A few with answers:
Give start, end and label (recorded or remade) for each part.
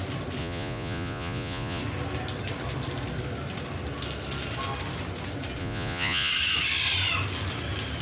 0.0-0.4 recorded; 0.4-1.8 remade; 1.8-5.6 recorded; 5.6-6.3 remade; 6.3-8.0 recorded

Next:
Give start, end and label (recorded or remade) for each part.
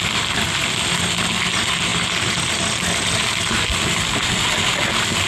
0.0-5.3 recorded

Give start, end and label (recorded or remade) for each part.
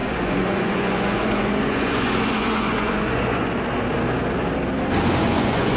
0.0-3.5 remade; 3.5-5.2 recorded; 5.2-5.8 remade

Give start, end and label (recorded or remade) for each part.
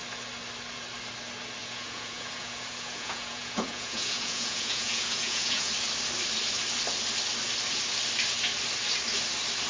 0.0-1.6 recorded; 1.6-5.7 remade; 5.7-9.7 recorded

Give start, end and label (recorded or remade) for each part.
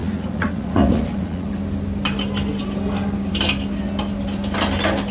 0.0-1.5 remade; 1.5-5.1 recorded